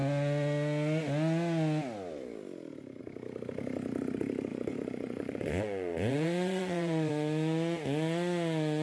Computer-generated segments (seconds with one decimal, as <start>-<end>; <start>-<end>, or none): 4.5-7.1